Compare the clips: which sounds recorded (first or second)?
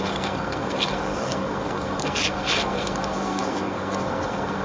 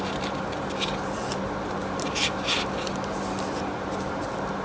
second